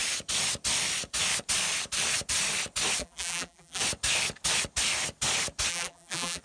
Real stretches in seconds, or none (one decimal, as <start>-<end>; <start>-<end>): 0.0-3.0; 3.8-5.7